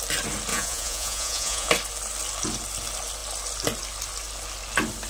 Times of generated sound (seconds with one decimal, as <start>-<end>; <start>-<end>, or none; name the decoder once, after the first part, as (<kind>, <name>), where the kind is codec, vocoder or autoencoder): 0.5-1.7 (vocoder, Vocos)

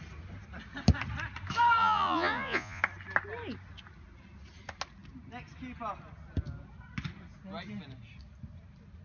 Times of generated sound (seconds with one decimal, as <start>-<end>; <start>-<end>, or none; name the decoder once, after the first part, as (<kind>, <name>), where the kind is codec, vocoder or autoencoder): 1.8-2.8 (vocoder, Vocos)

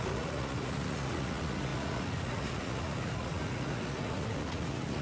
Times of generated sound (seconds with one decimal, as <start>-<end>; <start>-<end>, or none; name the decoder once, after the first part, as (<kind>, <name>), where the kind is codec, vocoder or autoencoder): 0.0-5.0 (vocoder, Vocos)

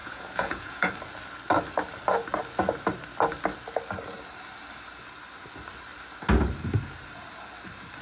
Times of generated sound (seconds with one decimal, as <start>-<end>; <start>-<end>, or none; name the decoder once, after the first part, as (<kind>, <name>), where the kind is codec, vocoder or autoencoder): 0.0-0.9 (vocoder, Vocos)

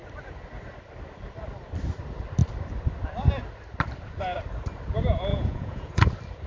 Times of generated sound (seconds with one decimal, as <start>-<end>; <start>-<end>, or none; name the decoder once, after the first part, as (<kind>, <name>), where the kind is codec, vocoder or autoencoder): 5.3-6.1 (vocoder, Vocos)

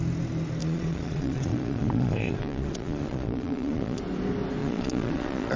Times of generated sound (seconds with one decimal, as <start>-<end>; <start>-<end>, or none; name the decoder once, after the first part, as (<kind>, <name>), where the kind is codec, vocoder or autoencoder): 0.6-4.0 (vocoder, Vocos); 4.6-5.6

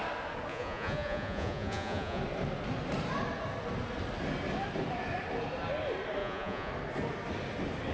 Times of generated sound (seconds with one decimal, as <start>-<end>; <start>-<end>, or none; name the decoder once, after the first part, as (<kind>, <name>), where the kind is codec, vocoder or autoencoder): 0.5-2.2 (vocoder, Vocos); 6.2-6.7